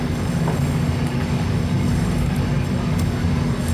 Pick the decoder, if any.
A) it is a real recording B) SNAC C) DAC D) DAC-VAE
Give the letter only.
C